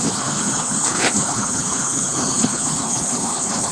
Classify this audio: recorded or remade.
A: remade